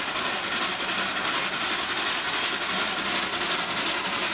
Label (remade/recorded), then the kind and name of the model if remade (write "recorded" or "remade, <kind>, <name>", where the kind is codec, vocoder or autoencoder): recorded